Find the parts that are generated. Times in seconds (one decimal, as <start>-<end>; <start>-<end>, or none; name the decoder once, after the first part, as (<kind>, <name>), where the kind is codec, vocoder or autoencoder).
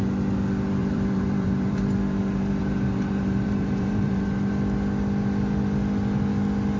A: 0.8-4.5 (vocoder, BigVGAN v2)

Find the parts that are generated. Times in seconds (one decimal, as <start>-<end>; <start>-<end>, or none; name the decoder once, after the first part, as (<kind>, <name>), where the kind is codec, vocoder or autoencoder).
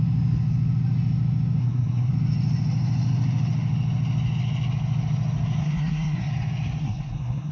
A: 1.6-2.1 (codec, SNAC); 5.6-6.3; 6.8-7.5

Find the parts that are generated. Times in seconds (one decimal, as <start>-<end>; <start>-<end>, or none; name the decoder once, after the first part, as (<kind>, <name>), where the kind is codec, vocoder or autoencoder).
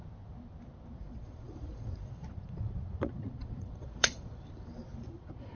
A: 1.0-4.3 (vocoder, Vocos); 4.9-5.5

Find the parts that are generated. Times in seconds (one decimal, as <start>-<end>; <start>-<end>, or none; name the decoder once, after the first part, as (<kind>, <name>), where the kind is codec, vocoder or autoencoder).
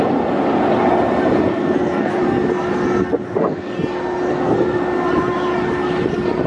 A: 1.5-2.2 (codec, SNAC); 3.0-3.7; 4.3-4.8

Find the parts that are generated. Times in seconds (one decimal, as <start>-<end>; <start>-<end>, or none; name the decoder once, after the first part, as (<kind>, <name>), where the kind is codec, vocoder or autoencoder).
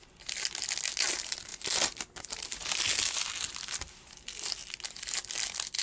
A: none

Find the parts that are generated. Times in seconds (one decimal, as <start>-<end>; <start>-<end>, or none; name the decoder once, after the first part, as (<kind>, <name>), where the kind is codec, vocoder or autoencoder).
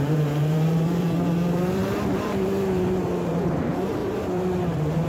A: 0.0-4.0 (vocoder, BigVGAN v2); 4.6-5.1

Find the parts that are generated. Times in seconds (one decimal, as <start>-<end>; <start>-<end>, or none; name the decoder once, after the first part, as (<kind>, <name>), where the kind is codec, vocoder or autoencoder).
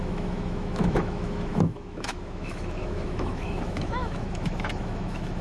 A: 0.0-5.4 (autoencoder, DAC-VAE)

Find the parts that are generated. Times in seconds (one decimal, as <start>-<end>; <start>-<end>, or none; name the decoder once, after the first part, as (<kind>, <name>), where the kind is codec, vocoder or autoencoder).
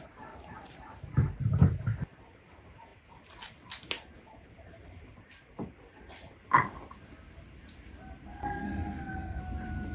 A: 8.4-9.4 (codec, SNAC)